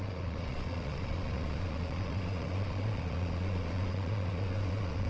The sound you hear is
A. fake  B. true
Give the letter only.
A